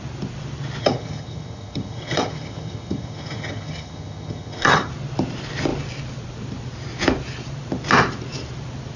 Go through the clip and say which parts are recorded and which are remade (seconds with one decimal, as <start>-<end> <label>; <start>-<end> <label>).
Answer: 0.0-0.8 recorded; 0.8-4.9 remade; 4.9-9.0 recorded